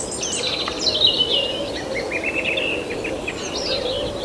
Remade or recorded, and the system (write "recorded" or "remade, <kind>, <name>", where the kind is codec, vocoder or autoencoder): recorded